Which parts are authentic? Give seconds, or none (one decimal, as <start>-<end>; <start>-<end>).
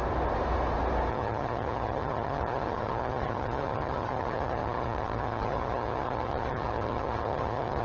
0.0-1.1